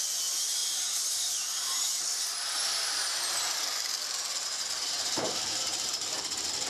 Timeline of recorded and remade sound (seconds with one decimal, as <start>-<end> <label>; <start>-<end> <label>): 0.0-0.6 recorded; 0.6-2.0 remade; 2.0-4.6 recorded; 4.6-5.9 remade; 5.9-6.7 recorded